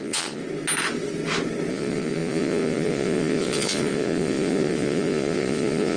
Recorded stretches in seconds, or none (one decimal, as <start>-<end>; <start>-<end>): 0.4-1.7